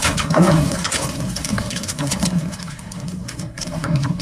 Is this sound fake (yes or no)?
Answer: yes